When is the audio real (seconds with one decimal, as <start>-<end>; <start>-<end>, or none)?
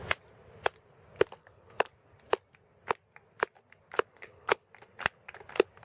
0.0-1.4; 1.9-4.1; 4.7-5.8